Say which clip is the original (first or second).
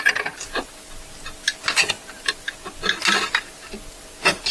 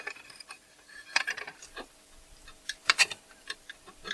first